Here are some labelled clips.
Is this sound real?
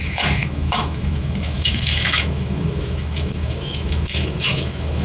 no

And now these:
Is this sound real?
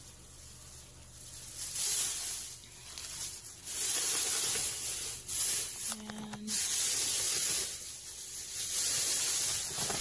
yes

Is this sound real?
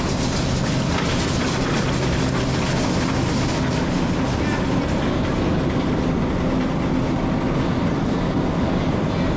yes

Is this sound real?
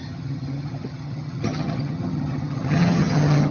no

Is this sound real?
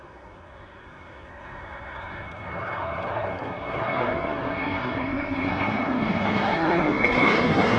no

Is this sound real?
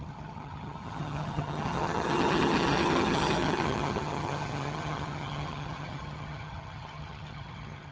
no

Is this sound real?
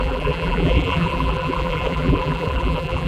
no